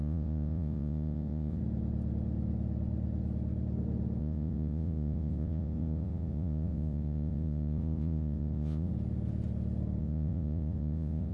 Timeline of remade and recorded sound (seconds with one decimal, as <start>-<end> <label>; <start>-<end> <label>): 0.0-1.6 remade; 1.6-4.2 recorded; 4.2-8.9 remade; 8.9-10.0 recorded; 10.0-11.3 remade